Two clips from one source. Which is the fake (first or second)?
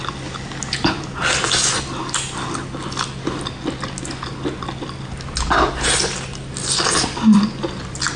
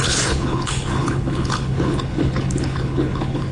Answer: second